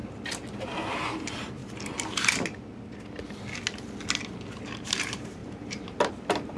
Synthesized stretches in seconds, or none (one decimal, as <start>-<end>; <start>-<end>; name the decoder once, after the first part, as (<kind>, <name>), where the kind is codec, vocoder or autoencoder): 0.6-1.6 (vocoder, BigVGAN v2); 4.6-6.6